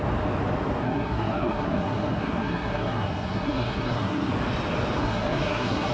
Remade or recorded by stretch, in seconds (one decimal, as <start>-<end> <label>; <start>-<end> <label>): 0.0-0.8 recorded; 0.8-4.3 remade; 4.3-5.0 recorded; 5.0-5.9 remade